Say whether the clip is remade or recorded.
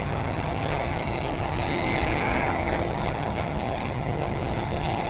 remade